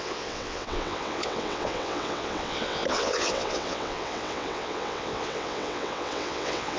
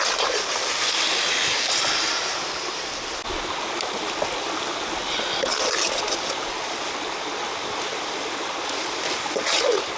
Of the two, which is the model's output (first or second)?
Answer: first